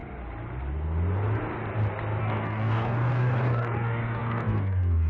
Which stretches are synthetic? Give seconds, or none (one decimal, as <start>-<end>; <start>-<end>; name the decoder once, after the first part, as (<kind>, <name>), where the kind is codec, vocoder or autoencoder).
2.2-5.1 (codec, DAC)